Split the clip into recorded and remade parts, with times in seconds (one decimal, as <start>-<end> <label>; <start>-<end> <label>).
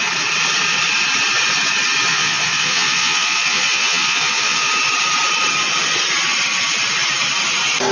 0.0-2.1 recorded; 2.1-4.7 remade; 4.7-7.9 recorded